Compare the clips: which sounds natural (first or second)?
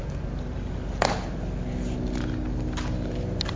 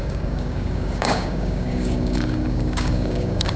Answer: first